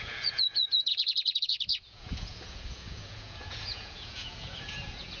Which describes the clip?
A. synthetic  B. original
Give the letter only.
A